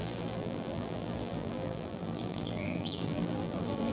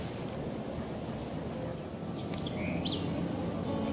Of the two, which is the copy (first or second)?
first